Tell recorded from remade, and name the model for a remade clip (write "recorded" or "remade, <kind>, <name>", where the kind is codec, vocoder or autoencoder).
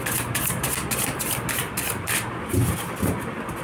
recorded